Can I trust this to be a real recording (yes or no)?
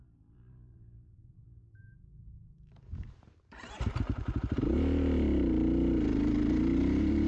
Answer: no